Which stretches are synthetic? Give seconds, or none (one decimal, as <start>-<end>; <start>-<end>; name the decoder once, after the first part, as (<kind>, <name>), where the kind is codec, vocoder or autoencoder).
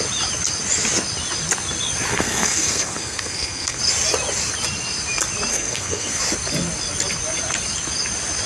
2.1-3.8 (codec, SNAC); 5.5-6.2